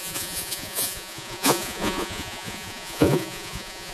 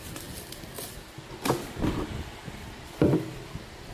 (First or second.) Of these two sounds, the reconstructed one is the first